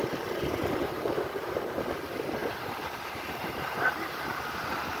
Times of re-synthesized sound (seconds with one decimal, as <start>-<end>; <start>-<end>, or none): 2.4-4.4